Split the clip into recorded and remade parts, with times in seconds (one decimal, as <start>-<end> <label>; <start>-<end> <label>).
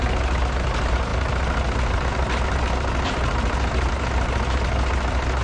0.0-5.4 recorded